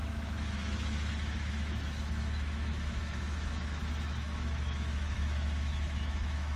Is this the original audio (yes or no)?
no